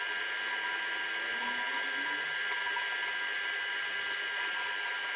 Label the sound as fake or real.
real